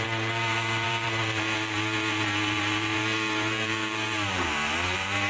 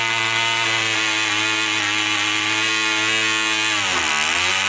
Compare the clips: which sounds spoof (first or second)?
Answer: first